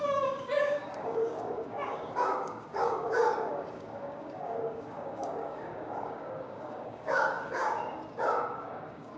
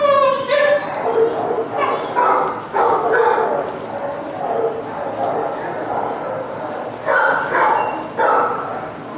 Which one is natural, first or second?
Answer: second